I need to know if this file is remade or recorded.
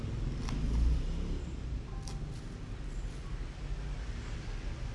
recorded